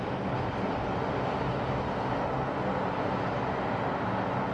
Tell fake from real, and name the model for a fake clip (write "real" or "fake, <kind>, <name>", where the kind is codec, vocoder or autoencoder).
real